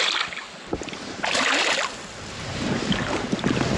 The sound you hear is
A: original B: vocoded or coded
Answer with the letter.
A